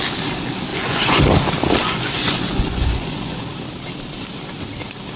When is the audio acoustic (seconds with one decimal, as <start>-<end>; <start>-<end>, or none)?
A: 0.0-0.7; 1.2-1.8; 3.5-5.2